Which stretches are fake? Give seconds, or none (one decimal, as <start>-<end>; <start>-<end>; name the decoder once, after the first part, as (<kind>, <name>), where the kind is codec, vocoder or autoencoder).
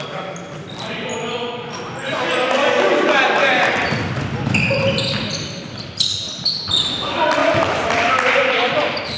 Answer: none